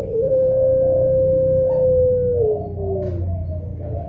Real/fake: real